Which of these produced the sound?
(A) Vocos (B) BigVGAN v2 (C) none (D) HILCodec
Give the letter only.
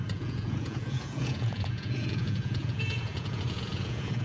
A